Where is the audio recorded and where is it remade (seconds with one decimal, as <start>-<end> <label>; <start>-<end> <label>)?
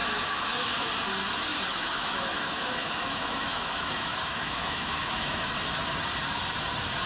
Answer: 0.0-0.9 remade; 0.9-1.5 recorded; 1.5-5.5 remade; 5.5-7.1 recorded